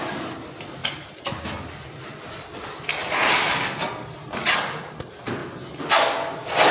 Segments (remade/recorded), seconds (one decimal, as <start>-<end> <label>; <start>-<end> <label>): 0.0-6.7 recorded